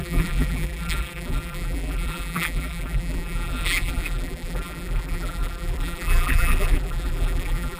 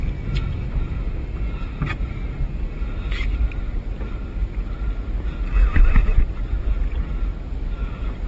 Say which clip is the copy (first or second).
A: first